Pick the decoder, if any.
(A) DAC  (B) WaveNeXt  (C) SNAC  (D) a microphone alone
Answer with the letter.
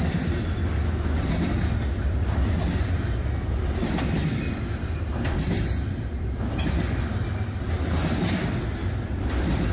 D